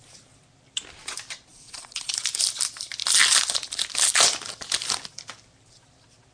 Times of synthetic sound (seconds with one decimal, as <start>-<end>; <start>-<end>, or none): 1.5-2.1